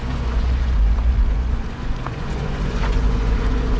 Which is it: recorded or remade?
remade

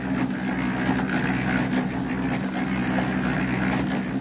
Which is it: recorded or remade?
recorded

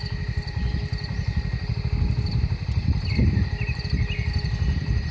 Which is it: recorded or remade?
recorded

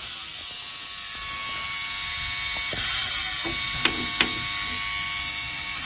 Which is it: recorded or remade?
recorded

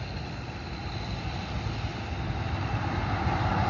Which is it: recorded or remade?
recorded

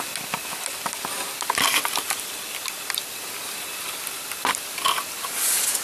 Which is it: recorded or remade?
recorded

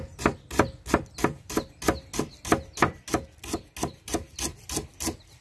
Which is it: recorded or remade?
recorded